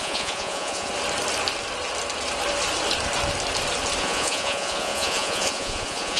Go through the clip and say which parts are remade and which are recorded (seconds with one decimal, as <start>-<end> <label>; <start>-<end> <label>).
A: 0.0-0.9 remade; 0.9-4.0 recorded; 4.0-6.2 remade